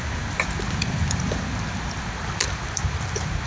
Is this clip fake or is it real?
real